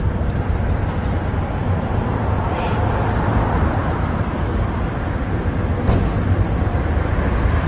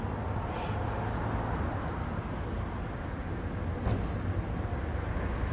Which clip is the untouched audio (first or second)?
second